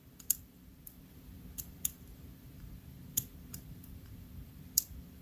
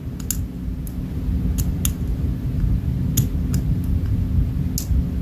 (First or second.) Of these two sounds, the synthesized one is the first